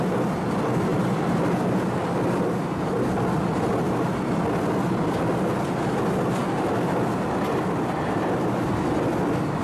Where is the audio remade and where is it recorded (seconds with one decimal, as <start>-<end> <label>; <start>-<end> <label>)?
0.0-9.6 recorded